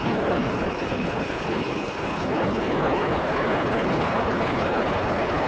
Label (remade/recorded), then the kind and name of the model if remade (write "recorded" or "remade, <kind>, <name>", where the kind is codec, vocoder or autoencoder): remade, codec, HILCodec